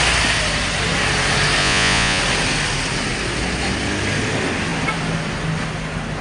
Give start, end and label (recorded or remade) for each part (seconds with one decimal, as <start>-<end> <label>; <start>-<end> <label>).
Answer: 0.0-1.6 recorded; 1.6-2.2 remade; 2.2-6.2 recorded